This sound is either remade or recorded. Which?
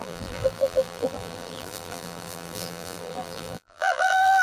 remade